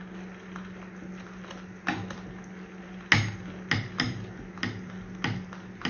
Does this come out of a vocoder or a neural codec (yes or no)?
no